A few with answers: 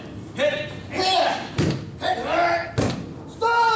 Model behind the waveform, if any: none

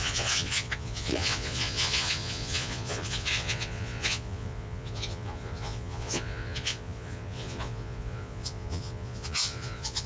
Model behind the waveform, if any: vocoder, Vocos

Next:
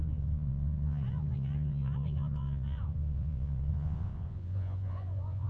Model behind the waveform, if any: vocoder, Vocos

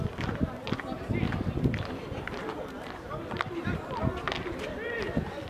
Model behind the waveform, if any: none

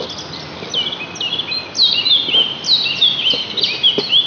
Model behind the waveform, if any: none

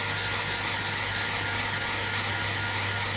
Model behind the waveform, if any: none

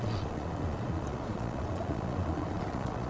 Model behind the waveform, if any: vocoder, Vocos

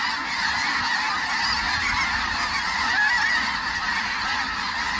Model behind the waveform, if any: none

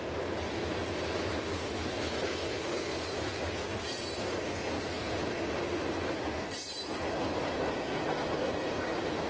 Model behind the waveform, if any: none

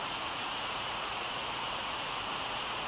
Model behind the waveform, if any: vocoder, Vocos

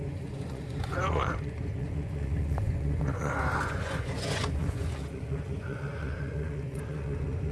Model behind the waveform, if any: vocoder, Vocos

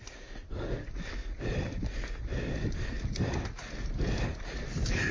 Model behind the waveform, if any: none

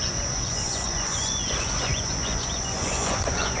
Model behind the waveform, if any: vocoder, Vocos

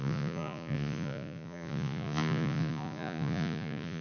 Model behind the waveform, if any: vocoder, Vocos